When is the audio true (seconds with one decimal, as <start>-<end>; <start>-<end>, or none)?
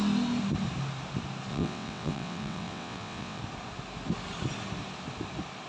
0.0-1.5; 3.4-5.7